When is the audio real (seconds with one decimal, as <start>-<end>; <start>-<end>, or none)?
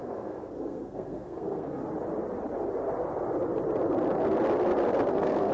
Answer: 1.8-5.1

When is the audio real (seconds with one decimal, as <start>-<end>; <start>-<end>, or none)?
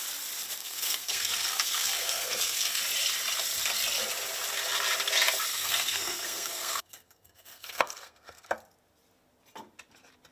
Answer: 0.0-0.6; 2.8-5.5; 8.5-10.3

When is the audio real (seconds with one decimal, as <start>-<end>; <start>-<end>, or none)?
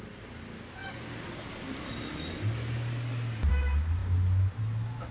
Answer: 0.0-5.1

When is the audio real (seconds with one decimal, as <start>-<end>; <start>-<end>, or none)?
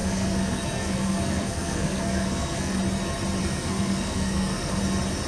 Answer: 2.8-3.4; 4.8-5.3